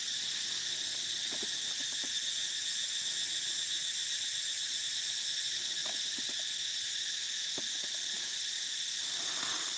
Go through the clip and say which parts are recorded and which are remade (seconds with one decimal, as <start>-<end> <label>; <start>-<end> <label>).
0.0-9.8 recorded